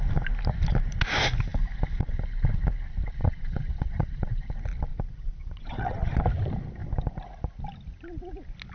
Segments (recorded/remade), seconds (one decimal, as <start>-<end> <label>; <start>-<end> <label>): 0.0-3.2 recorded; 3.2-4.5 remade; 4.5-4.9 recorded; 4.9-6.2 remade; 6.2-8.7 recorded